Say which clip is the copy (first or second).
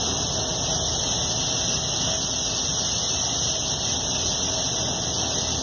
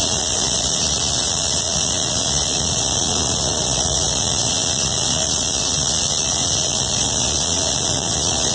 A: second